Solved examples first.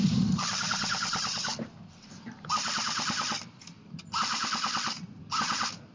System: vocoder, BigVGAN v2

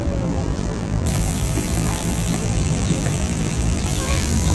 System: vocoder, BigVGAN v2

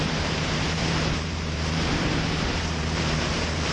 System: vocoder, BigVGAN v2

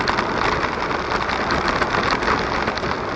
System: none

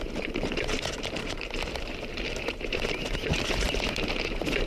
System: vocoder, BigVGAN v2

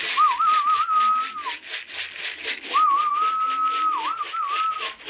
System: none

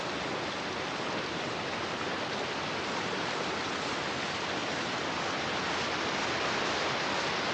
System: none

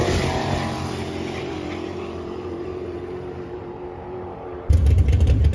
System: vocoder, BigVGAN v2